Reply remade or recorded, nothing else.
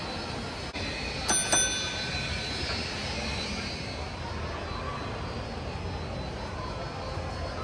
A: recorded